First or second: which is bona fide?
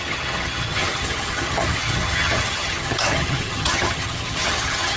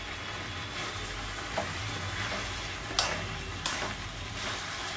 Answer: second